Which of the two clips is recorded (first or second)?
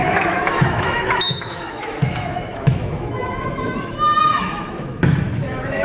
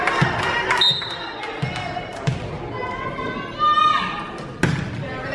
second